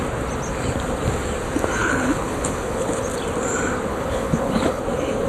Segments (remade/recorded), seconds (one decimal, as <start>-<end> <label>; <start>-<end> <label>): 0.0-1.8 recorded; 1.8-3.0 remade; 3.0-3.9 recorded; 3.9-4.8 remade; 4.8-5.3 recorded